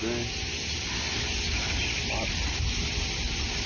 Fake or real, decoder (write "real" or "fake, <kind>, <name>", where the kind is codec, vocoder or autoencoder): real